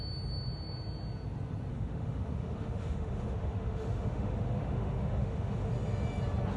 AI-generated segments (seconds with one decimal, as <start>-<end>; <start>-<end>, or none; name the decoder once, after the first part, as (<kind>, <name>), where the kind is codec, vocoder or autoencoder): 1.7-5.7 (autoencoder, DAC-VAE)